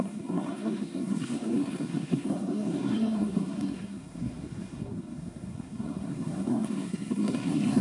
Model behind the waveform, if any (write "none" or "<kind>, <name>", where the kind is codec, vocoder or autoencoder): codec, SNAC